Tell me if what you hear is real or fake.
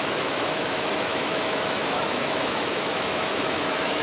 fake